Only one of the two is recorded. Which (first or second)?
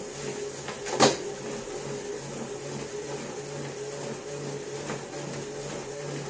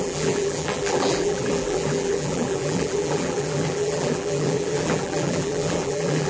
first